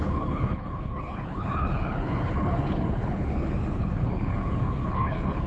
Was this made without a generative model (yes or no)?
no